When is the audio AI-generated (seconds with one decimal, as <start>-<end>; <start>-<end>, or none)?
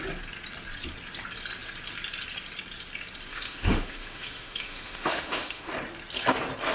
3.3-5.7